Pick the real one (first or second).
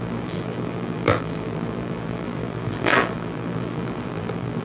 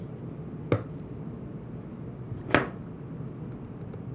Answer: second